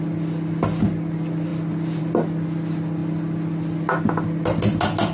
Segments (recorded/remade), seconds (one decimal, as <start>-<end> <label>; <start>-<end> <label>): 0.0-5.1 recorded

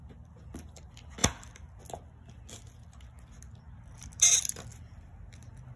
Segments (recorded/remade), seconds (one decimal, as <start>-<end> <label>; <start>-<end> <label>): 0.0-5.8 recorded

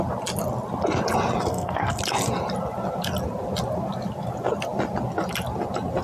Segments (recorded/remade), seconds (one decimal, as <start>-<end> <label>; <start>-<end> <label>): 0.0-1.5 recorded; 1.5-2.0 remade; 2.0-6.0 recorded

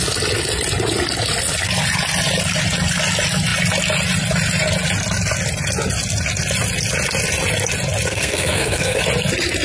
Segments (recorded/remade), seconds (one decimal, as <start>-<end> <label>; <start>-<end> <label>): 0.0-8.1 recorded; 8.1-9.0 remade; 9.0-9.6 recorded

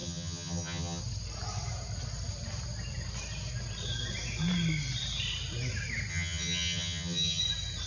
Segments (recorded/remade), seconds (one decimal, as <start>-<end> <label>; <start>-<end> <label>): 0.0-1.0 remade; 1.0-6.1 recorded; 6.1-7.4 remade; 7.4-7.9 recorded

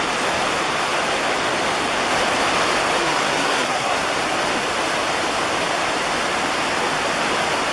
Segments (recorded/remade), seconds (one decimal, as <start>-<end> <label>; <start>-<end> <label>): 0.0-3.0 recorded; 3.0-4.2 remade; 4.2-7.7 recorded

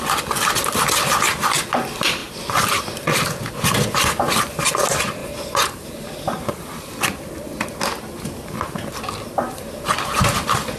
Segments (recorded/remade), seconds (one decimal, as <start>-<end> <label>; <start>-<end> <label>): 0.0-5.2 recorded; 5.2-6.9 remade; 6.9-10.8 recorded

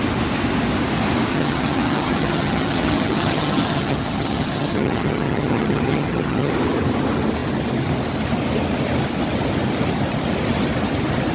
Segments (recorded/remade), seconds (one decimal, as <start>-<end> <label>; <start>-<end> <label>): 0.0-1.3 recorded; 1.3-6.5 remade; 6.5-11.3 recorded